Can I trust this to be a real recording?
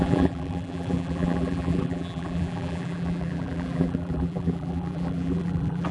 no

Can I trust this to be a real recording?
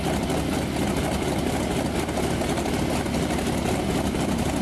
yes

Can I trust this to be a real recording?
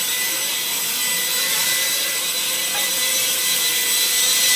yes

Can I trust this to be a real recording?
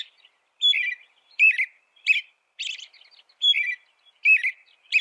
no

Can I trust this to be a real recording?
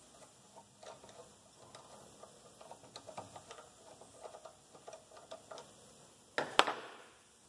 yes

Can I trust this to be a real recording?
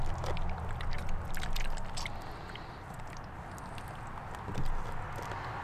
yes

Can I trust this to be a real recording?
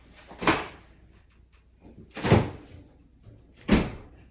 yes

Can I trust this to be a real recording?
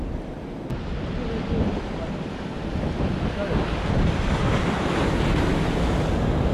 yes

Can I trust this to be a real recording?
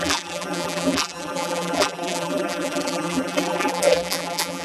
no